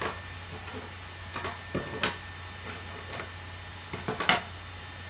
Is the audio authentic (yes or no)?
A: yes